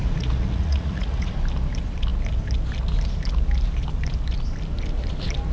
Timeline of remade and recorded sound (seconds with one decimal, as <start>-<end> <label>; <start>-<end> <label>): 0.0-1.3 remade; 1.3-5.5 recorded